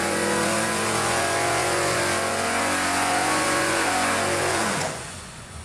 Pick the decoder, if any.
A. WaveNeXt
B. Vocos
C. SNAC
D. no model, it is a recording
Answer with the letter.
B